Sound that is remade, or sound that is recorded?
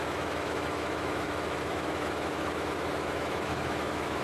remade